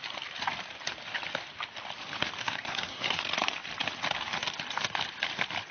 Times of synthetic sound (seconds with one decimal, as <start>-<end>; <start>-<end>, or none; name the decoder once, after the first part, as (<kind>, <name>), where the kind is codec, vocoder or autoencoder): 2.4-3.2 (codec, SNAC)